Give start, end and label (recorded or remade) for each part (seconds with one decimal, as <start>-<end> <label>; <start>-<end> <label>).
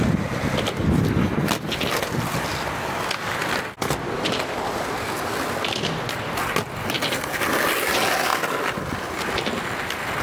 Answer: 0.0-10.2 recorded